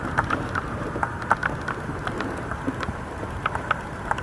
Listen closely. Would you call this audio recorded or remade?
remade